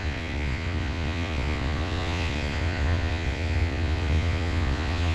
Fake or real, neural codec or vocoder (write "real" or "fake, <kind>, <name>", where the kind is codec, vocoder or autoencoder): fake, vocoder, Vocos